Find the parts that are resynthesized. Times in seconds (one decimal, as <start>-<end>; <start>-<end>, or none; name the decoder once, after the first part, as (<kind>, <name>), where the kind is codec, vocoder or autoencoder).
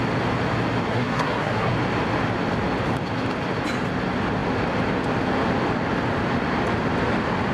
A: 0.9-1.7 (codec, SNAC)